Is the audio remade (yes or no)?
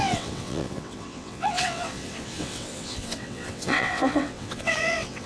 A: yes